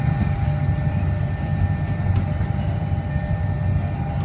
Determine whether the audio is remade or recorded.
recorded